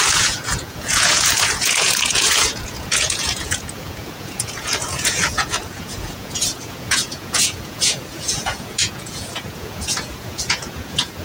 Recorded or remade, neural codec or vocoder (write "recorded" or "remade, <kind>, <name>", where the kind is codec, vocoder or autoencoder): remade, vocoder, Vocos